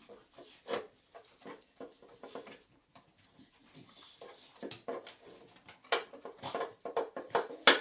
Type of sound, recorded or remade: recorded